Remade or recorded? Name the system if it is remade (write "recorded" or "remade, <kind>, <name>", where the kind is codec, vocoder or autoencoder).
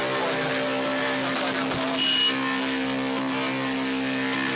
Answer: recorded